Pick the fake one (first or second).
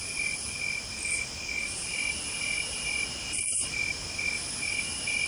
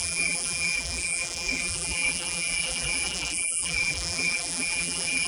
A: second